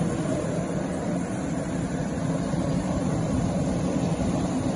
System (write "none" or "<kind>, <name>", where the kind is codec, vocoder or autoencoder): vocoder, BigVGAN v2